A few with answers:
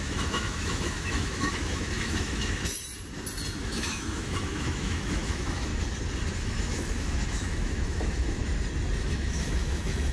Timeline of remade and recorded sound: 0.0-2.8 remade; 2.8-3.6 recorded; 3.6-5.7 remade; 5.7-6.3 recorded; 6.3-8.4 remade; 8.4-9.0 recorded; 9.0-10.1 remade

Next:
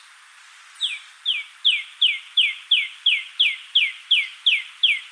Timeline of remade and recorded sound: 0.0-5.1 recorded

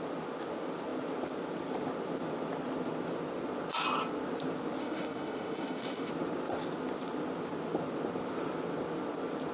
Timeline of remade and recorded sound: 0.0-4.8 recorded; 4.8-6.1 remade; 6.1-9.5 recorded

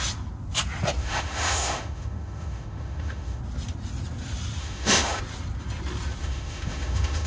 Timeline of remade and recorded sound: 0.0-1.0 recorded; 1.0-3.4 remade; 3.4-4.6 recorded; 4.6-5.2 remade; 5.2-6.2 recorded; 6.2-7.3 remade

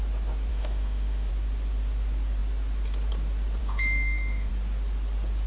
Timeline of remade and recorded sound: 0.0-0.5 recorded; 0.5-1.3 remade; 1.3-3.6 recorded; 3.6-4.5 remade; 4.5-5.5 recorded